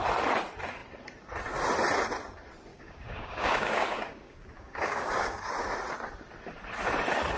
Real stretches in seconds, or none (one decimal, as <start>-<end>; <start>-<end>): 0.0-2.7; 5.5-7.4